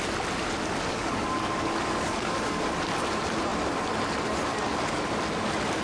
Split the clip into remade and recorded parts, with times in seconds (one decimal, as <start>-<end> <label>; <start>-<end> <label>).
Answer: 0.0-0.9 recorded; 0.9-2.7 remade; 2.7-5.8 recorded

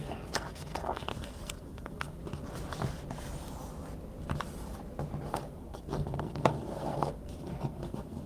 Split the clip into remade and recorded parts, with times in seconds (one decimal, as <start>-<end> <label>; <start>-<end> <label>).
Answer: 0.0-2.2 remade; 2.2-5.3 recorded; 5.3-8.3 remade